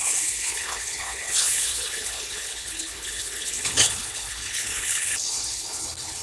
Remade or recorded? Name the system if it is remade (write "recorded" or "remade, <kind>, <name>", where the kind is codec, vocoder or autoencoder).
remade, codec, HILCodec